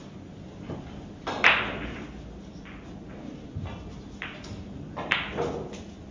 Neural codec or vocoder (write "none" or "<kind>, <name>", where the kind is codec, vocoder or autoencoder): none